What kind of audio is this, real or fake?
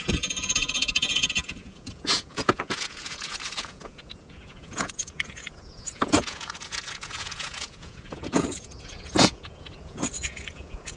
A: fake